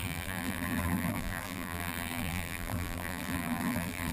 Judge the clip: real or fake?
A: fake